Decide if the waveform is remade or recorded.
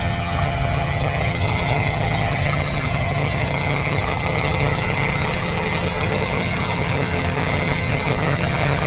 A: remade